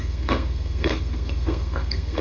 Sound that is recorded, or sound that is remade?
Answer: remade